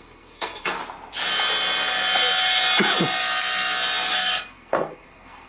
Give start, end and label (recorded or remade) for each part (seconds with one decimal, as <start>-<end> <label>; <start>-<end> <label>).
0.0-0.8 remade; 0.8-4.1 recorded; 4.1-5.5 remade